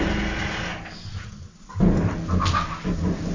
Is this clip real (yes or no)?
yes